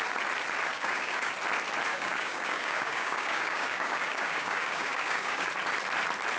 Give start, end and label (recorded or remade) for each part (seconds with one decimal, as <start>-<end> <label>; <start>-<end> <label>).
0.0-0.7 recorded; 0.7-1.3 remade; 1.3-1.9 recorded; 1.9-5.5 remade; 5.5-6.4 recorded